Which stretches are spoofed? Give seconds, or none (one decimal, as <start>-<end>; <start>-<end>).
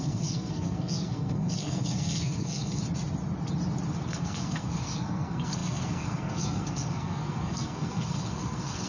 0.0-2.8; 4.1-8.9